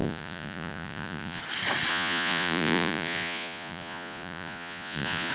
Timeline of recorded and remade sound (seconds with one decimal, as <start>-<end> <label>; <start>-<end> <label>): 0.0-1.4 remade; 1.4-1.9 recorded; 1.9-5.3 remade